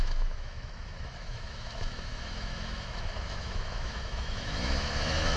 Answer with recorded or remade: remade